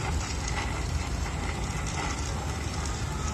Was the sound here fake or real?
real